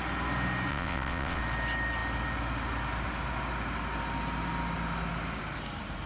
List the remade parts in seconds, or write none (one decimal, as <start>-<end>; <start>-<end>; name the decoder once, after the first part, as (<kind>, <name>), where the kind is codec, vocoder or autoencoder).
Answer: 0.7-1.4 (vocoder, WaveNeXt)